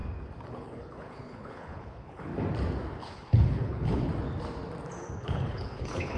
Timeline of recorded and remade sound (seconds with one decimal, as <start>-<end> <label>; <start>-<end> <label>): 0.0-0.5 recorded; 0.5-2.3 remade; 2.3-3.0 recorded; 3.0-4.0 remade; 4.0-5.0 recorded; 5.0-6.2 remade